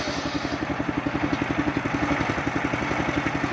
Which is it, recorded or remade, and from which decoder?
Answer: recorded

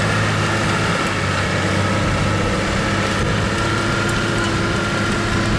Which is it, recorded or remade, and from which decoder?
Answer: recorded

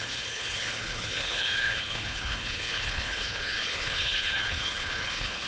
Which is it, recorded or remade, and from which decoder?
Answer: remade, codec, HILCodec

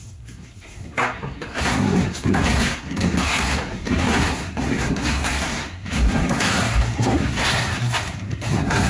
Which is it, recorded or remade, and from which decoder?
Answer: remade, codec, SNAC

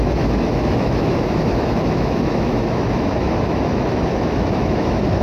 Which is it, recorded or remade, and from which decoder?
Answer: remade, autoencoder, DAC-VAE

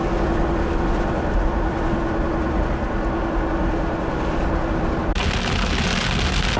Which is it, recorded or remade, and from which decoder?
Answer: recorded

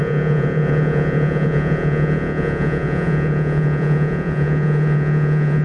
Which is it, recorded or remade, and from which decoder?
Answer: remade, vocoder, Vocos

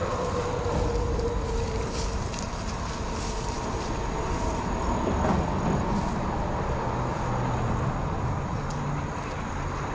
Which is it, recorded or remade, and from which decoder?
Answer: recorded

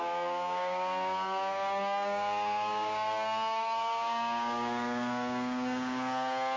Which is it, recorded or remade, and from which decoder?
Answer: remade, codec, DAC